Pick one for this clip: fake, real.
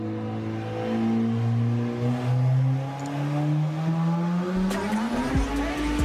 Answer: real